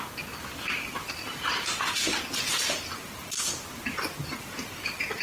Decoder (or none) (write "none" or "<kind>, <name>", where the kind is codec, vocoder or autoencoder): none